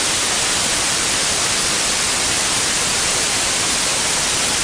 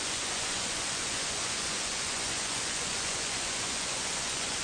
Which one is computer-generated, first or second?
second